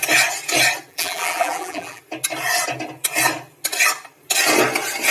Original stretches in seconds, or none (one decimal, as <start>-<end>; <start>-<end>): 0.0-0.9; 2.0-5.1